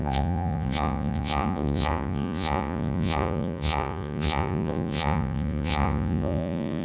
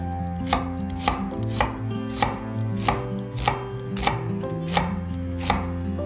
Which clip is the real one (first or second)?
second